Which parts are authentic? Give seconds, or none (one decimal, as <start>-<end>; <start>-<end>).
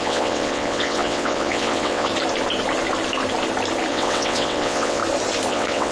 2.1-3.9; 5.0-5.5